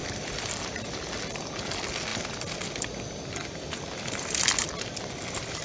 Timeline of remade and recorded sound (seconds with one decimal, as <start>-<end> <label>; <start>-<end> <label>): 0.0-2.1 recorded; 2.1-5.6 remade